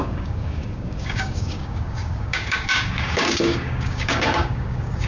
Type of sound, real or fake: fake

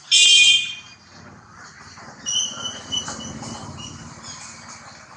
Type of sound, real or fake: real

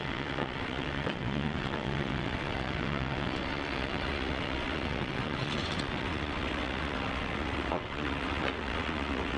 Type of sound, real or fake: fake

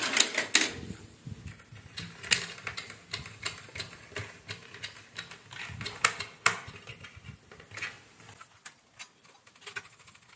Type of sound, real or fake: real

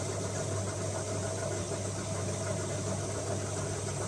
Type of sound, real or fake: real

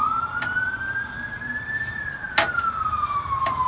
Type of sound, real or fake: real